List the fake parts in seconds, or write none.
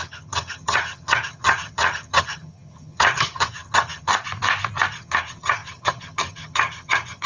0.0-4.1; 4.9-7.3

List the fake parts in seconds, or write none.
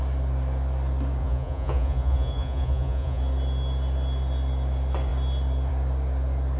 1.2-3.2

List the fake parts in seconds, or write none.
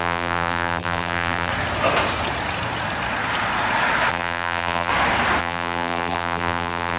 0.0-1.5; 4.1-4.9; 5.4-7.0